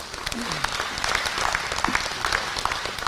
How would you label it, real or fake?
real